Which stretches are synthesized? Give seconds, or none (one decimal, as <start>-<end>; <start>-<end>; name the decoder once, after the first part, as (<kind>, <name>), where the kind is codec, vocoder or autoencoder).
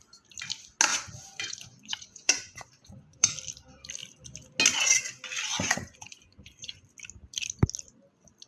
0.9-3.3 (vocoder, Vocos); 5.5-6.9